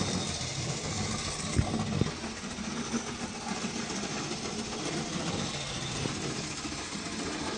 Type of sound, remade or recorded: recorded